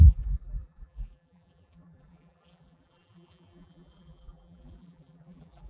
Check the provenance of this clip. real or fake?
fake